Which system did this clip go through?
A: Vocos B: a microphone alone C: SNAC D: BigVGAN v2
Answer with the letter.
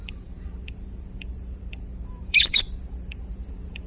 D